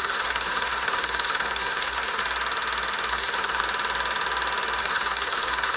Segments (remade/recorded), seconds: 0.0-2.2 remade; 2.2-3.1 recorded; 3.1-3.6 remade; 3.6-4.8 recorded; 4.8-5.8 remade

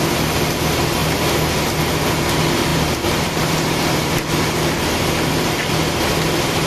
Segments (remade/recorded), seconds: 0.0-2.7 recorded; 2.7-5.6 remade; 5.6-6.7 recorded

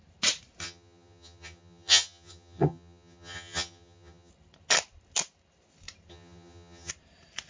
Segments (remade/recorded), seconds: 0.0-0.6 recorded; 0.6-4.3 remade; 4.3-6.1 recorded; 6.1-6.9 remade; 6.9-7.5 recorded

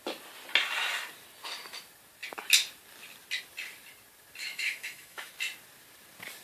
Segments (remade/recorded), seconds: 0.0-4.4 recorded; 4.4-5.3 remade; 5.3-6.4 recorded

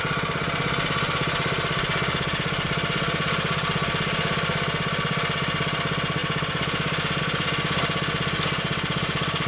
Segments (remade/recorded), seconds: 0.0-9.5 recorded